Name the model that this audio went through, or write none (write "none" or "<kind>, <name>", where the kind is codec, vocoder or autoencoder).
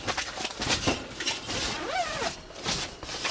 none